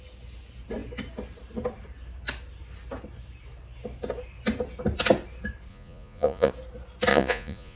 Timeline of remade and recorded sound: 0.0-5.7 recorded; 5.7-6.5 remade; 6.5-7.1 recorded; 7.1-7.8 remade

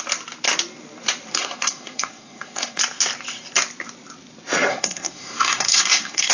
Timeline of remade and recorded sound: 0.0-1.3 recorded; 1.3-2.8 remade; 2.8-4.7 recorded; 4.7-6.3 remade

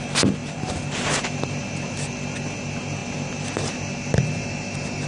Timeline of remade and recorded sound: 0.0-5.1 recorded

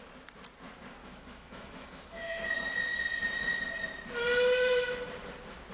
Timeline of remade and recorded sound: 0.0-1.0 recorded; 1.0-2.7 remade; 2.7-5.7 recorded

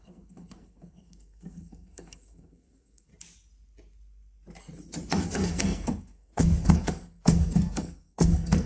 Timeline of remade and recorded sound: 0.0-3.1 remade; 3.1-5.2 recorded; 5.2-8.7 remade